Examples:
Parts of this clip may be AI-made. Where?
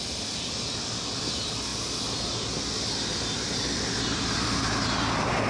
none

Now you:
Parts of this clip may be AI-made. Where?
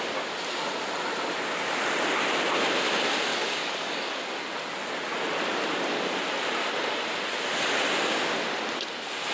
3.3-4.3 (codec, DAC)